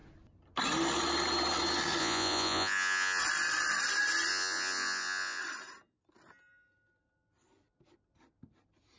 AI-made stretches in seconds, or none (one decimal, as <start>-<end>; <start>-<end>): 2.0-3.2; 4.3-5.4